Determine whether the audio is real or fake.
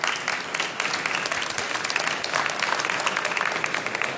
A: real